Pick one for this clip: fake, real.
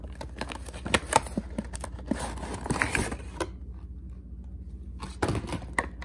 real